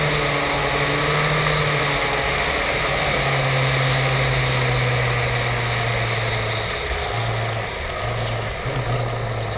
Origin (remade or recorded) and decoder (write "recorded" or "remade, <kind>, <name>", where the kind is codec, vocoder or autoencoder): recorded